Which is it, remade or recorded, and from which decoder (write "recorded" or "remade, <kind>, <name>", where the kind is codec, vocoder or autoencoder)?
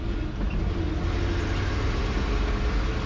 recorded